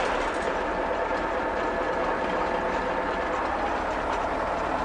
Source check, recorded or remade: recorded